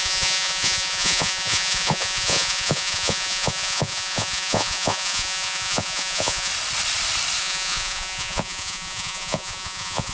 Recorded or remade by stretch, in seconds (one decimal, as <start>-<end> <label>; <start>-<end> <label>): 0.0-6.5 remade; 6.5-7.4 recorded; 7.4-10.1 remade